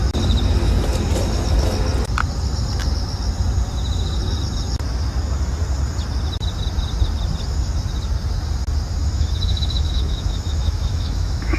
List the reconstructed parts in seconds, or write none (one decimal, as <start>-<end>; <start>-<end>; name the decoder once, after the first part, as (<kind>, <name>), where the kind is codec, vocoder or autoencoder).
9.0-11.6 (autoencoder, DAC-VAE)